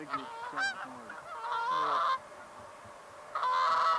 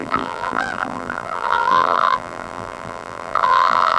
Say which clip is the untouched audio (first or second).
first